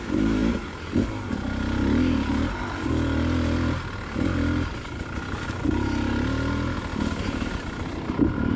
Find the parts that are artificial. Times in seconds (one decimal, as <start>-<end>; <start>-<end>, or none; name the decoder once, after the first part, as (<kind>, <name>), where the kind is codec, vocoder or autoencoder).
none